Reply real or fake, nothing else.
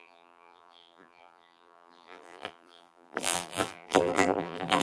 fake